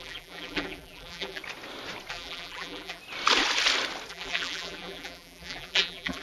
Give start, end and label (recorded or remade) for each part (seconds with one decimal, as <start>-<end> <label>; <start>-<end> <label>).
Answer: 0.0-1.4 remade; 1.4-2.1 recorded; 2.1-3.0 remade; 3.0-4.1 recorded; 4.1-6.2 remade